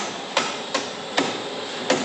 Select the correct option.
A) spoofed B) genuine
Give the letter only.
B